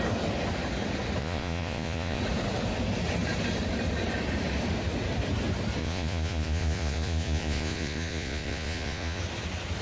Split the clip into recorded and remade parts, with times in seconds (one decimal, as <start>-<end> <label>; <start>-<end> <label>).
0.0-1.2 recorded; 1.2-2.2 remade; 2.2-5.8 recorded; 5.8-9.2 remade; 9.2-9.8 recorded

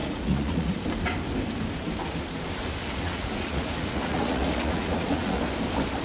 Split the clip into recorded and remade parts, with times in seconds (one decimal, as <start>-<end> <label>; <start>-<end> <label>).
0.0-0.8 remade; 0.8-2.8 recorded; 2.8-5.4 remade; 5.4-6.0 recorded

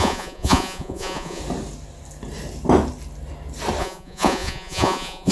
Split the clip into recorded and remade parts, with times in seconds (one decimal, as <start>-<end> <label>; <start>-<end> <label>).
0.0-1.4 remade; 1.4-3.8 recorded; 3.8-5.3 remade

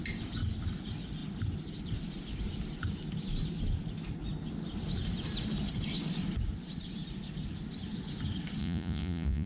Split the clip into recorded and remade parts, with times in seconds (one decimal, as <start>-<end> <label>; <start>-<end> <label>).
0.0-8.6 recorded; 8.6-9.5 remade